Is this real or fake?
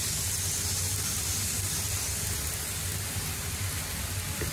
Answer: real